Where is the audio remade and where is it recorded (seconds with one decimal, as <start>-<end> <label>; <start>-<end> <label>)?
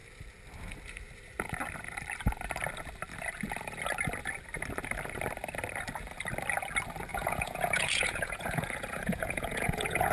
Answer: 0.0-7.1 recorded; 7.1-10.1 remade